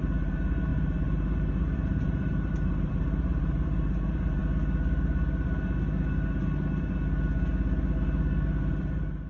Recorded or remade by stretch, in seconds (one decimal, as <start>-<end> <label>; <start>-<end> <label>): 0.0-4.4 remade; 4.4-8.7 recorded; 8.7-9.3 remade